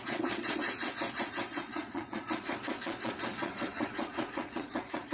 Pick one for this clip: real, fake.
fake